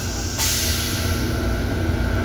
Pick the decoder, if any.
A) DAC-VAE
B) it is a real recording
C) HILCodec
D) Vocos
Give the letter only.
B